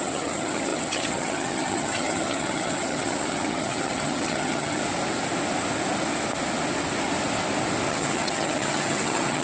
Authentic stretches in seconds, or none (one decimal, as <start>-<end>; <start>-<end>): 4.8-7.9